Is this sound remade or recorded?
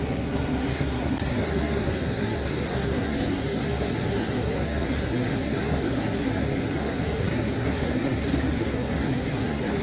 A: remade